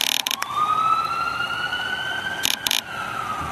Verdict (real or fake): real